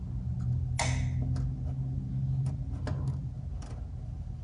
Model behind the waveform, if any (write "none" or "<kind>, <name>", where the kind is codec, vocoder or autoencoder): none